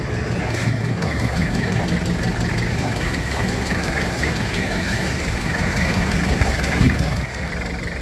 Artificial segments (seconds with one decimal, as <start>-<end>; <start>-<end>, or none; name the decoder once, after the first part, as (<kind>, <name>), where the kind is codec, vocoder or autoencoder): 0.4-1.8 (codec, SNAC); 2.7-7.5